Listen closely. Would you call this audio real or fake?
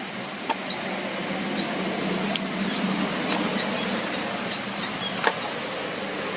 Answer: real